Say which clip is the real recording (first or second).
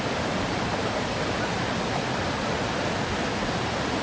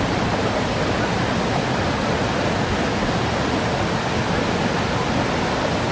second